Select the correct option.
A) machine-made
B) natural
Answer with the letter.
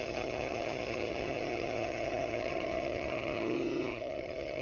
A